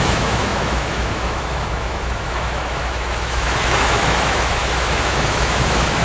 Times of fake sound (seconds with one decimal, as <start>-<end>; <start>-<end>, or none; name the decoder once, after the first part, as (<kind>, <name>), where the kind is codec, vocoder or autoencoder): 0.0-6.0 (autoencoder, DAC-VAE)